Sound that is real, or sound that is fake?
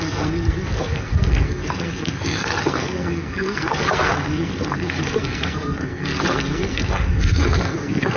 fake